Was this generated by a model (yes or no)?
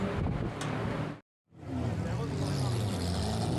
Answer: no